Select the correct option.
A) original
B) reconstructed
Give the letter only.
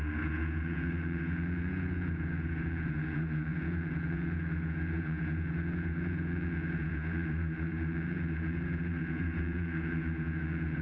B